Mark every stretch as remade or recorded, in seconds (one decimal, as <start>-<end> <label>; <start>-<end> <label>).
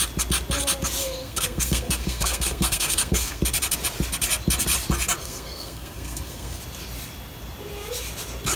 0.0-1.0 recorded; 1.0-3.4 remade; 3.4-5.2 recorded; 5.2-6.6 remade; 6.6-8.6 recorded